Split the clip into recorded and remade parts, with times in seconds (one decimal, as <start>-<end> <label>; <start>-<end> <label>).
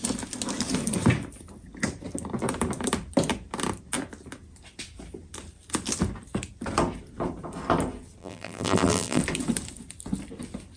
0.0-8.2 recorded; 8.2-9.2 remade; 9.2-10.8 recorded